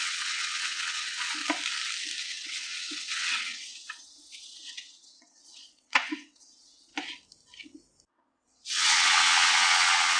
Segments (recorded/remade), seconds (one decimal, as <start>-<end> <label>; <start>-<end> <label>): 0.0-1.4 remade; 1.4-2.2 recorded; 2.2-6.9 remade; 6.9-8.1 recorded; 8.1-10.2 remade